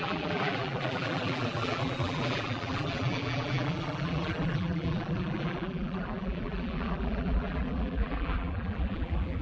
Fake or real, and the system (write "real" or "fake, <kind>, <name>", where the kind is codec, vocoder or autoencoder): fake, vocoder, BigVGAN v2